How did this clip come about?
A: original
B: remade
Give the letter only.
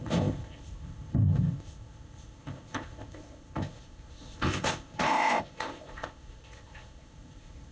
B